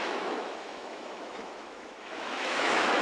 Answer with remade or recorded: remade